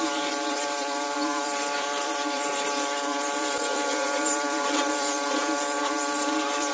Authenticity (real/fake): fake